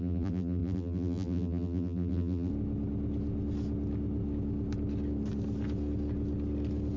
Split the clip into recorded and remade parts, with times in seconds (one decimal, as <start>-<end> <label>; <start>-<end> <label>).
0.0-2.5 remade; 2.5-7.0 recorded